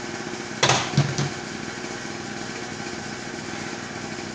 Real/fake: real